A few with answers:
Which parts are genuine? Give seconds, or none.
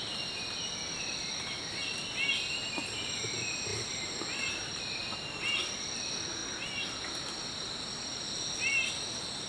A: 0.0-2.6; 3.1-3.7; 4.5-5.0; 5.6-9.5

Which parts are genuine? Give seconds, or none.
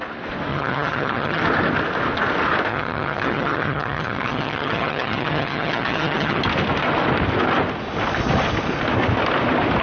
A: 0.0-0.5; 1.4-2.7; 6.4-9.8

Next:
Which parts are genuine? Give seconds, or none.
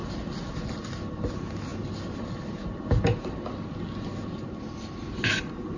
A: 0.0-5.8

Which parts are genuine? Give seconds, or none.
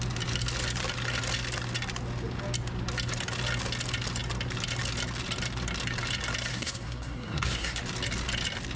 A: 0.0-6.5; 7.8-8.8